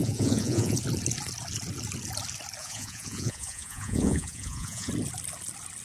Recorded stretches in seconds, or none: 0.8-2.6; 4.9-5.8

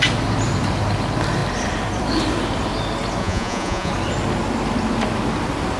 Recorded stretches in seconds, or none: 0.0-3.2; 3.9-5.8

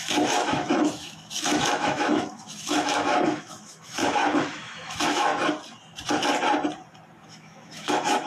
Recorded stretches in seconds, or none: 5.3-7.2

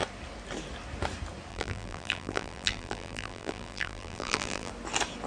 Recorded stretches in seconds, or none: 0.0-1.5; 4.7-5.3